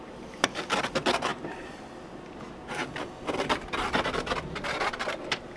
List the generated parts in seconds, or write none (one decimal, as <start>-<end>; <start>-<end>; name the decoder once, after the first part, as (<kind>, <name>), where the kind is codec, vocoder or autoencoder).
1.3-1.9 (vocoder, BigVGAN v2)

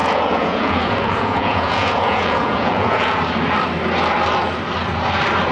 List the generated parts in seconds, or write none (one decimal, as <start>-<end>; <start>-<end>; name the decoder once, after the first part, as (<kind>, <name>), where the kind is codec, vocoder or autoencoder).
0.0-3.2 (vocoder, Vocos)

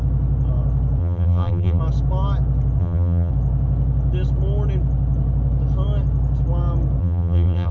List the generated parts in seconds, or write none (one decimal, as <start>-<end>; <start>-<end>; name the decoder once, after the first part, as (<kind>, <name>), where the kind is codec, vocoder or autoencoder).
1.0-1.8 (vocoder, BigVGAN v2); 2.8-3.3; 7.0-7.7

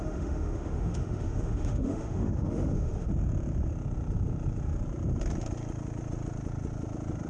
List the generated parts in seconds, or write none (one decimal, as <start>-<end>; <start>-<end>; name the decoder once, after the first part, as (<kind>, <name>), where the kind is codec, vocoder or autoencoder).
0.0-3.1 (autoencoder, DAC-VAE)